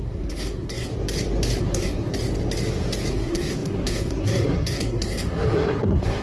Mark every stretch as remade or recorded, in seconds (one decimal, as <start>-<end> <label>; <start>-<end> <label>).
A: 0.0-0.9 remade; 0.9-1.6 recorded; 1.6-2.1 remade; 2.1-3.1 recorded; 3.1-6.2 remade